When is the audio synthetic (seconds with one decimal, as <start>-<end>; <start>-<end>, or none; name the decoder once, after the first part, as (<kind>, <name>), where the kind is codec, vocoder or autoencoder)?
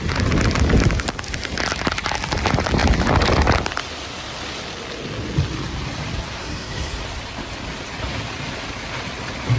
6.4-7.0 (codec, SNAC)